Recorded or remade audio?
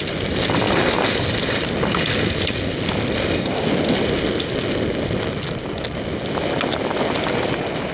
recorded